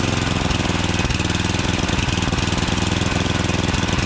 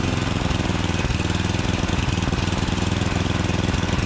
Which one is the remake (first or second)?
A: second